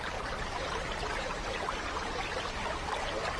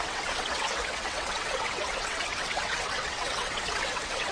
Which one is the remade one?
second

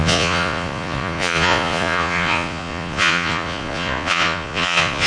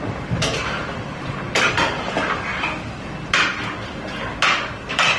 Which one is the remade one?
first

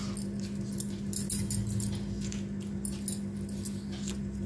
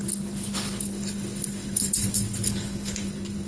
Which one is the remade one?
second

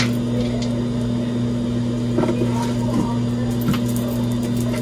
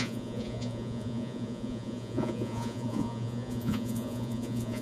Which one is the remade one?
second